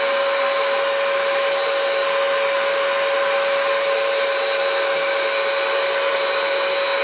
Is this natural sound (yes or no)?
yes